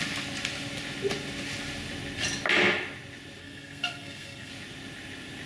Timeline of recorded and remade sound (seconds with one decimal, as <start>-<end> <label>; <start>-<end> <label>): 0.0-3.4 recorded; 3.4-4.5 remade; 4.5-5.5 recorded